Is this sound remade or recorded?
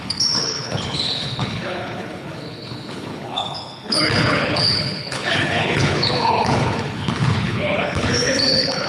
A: remade